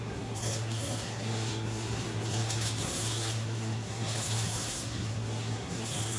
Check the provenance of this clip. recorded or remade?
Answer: remade